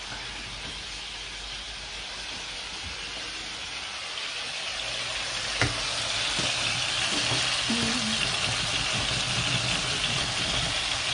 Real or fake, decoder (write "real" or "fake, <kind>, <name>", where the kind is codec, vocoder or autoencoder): real